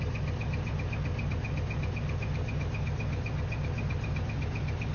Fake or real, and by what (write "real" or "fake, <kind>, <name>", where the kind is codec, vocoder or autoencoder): real